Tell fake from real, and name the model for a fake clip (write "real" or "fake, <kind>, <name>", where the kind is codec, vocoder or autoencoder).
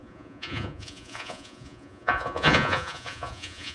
fake, vocoder, Vocos